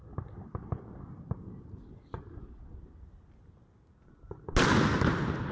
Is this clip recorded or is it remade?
recorded